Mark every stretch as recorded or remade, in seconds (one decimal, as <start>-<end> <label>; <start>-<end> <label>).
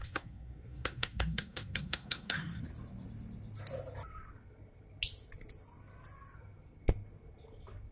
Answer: 0.0-2.6 remade; 2.6-7.9 recorded